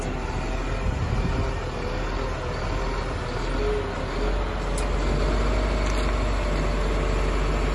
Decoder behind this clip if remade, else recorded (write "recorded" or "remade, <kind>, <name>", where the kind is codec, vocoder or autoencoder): recorded